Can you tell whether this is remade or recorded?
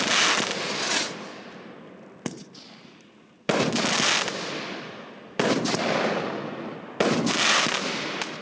recorded